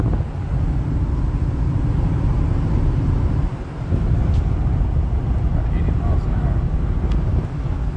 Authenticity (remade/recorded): recorded